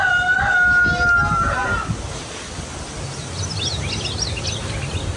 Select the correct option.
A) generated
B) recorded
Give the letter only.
B